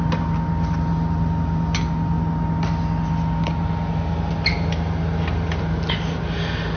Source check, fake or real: real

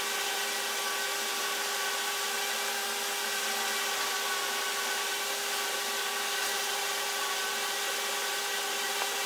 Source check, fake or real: real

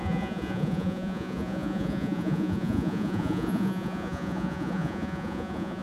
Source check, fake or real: fake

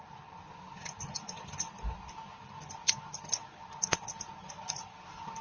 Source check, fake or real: real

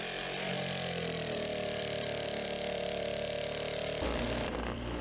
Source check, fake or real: fake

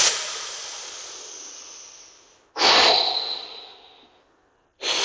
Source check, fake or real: real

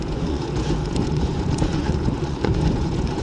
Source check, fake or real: fake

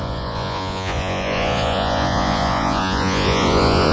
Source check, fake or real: fake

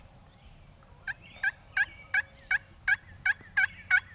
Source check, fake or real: real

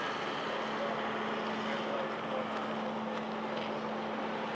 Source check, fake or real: real